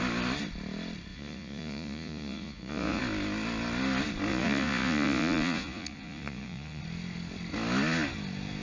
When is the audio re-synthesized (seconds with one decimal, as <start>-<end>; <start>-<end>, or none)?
1.1-3.0; 4.3-6.8